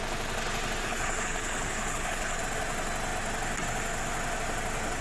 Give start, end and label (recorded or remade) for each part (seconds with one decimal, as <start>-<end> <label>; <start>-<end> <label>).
0.0-0.8 recorded; 0.8-2.4 remade; 2.4-5.0 recorded